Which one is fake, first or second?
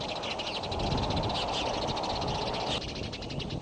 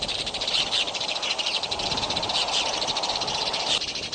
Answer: second